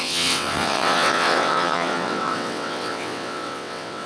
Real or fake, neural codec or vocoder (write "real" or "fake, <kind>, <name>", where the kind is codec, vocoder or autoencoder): fake, vocoder, WaveNeXt